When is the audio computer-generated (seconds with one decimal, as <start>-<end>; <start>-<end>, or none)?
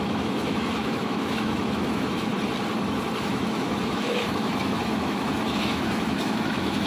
0.0-2.3; 3.2-6.9